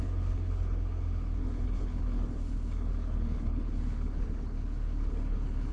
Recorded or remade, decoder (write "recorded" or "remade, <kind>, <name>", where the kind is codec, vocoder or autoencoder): remade, codec, HILCodec